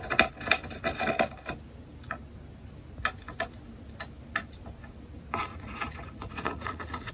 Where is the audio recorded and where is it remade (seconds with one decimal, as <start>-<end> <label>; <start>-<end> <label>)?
0.0-5.5 recorded; 5.5-7.1 remade